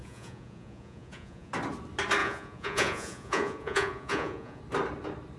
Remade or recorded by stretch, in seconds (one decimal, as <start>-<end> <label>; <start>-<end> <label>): 0.0-1.5 remade; 1.5-2.2 recorded; 2.2-4.6 remade; 4.6-5.4 recorded